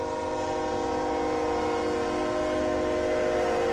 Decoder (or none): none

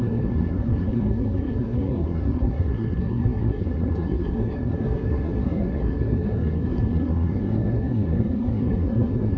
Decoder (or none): codec, SNAC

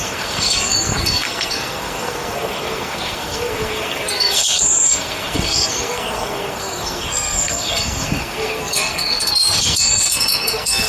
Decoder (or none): codec, SNAC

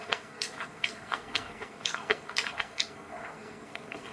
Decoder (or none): codec, SNAC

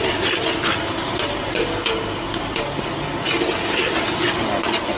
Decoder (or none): none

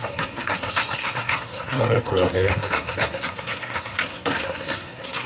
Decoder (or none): codec, SNAC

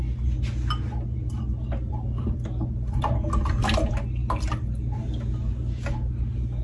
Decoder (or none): none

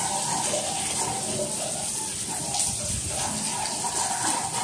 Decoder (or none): none